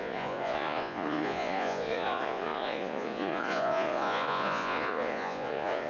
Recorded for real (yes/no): no